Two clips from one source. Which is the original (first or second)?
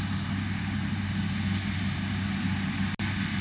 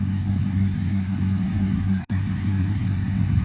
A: first